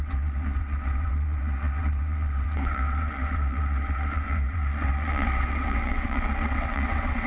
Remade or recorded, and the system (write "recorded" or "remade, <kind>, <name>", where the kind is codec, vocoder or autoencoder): remade, vocoder, WaveNeXt